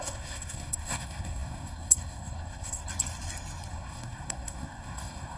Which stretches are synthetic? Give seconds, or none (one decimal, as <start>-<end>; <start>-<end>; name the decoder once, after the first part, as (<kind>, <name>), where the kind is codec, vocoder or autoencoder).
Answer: 0.0-2.8 (codec, SNAC); 3.7-5.4